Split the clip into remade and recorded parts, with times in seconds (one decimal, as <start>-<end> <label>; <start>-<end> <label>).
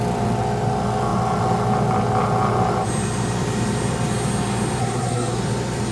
0.0-4.8 recorded; 4.8-5.4 remade; 5.4-5.9 recorded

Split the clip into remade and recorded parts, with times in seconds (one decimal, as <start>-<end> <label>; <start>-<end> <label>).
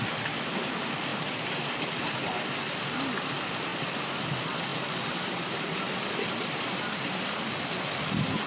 0.0-1.1 recorded; 1.1-1.7 remade; 1.7-4.7 recorded; 4.7-7.7 remade; 7.7-8.5 recorded